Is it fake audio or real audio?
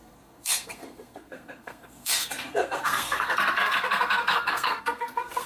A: fake